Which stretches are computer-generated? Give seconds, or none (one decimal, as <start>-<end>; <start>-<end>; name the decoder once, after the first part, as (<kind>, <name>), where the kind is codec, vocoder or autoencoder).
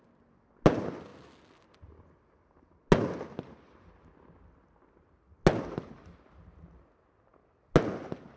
none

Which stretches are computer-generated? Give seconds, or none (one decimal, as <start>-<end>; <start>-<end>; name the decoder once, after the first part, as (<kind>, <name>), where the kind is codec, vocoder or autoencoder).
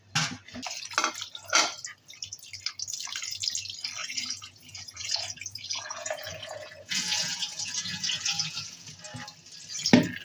4.0-8.9 (vocoder, Vocos)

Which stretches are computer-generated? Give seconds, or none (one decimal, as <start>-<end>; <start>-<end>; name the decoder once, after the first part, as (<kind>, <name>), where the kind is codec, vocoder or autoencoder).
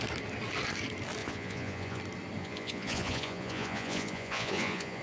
1.2-2.0 (vocoder, Vocos); 2.4-5.0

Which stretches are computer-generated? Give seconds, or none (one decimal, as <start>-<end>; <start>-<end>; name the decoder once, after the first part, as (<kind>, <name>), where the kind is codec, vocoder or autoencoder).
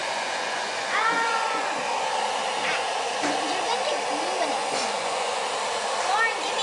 0.0-1.7 (vocoder, Vocos); 4.6-5.5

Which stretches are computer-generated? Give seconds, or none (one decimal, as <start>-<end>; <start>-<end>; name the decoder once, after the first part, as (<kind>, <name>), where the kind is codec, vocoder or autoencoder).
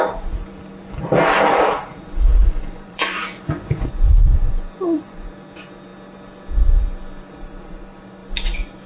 2.4-5.3 (vocoder, Vocos)